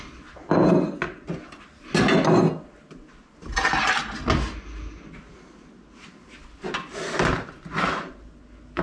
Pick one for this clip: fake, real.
real